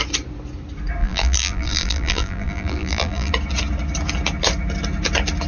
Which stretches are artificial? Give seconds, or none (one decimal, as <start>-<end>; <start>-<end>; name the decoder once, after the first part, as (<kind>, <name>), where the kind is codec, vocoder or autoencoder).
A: 1.0-3.3 (vocoder, BigVGAN v2)